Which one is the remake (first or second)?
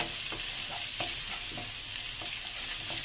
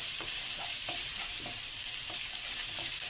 second